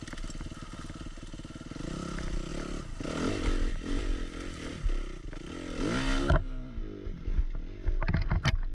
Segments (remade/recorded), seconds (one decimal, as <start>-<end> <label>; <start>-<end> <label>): 0.0-2.5 remade; 2.5-3.3 recorded; 3.3-4.7 remade; 4.7-8.7 recorded